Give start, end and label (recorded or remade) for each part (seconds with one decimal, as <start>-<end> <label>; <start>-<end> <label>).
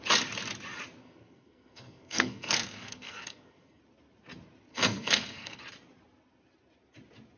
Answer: 0.0-1.0 recorded; 1.0-3.8 remade; 3.8-4.7 recorded; 4.7-5.6 remade; 5.6-7.4 recorded